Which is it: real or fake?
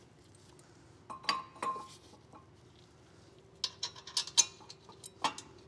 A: real